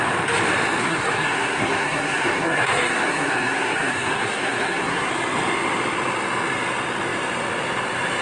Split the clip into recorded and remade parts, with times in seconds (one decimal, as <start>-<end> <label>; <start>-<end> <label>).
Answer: 0.0-0.8 recorded; 0.8-5.1 remade; 5.1-8.2 recorded